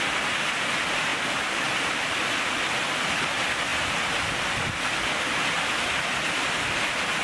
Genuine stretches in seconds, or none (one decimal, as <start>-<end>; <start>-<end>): 0.0-7.2